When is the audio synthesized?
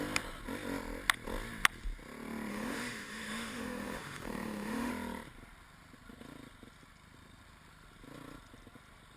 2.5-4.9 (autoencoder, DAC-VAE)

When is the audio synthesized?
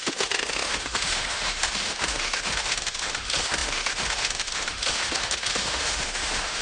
0.0-6.6 (autoencoder, DAC-VAE)